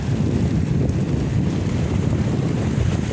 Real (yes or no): yes